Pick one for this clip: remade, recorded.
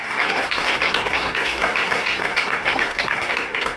remade